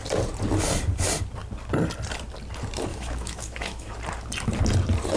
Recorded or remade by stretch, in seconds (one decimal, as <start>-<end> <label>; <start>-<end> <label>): 0.0-2.9 recorded; 2.9-3.9 remade; 3.9-5.2 recorded